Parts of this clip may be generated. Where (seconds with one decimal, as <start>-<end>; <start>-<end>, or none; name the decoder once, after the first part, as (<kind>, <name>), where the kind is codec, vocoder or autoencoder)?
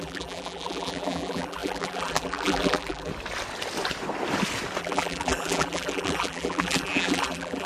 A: 0.0-3.1 (vocoder, BigVGAN v2); 4.8-7.7